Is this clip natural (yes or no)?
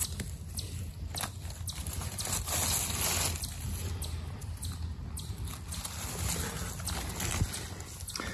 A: yes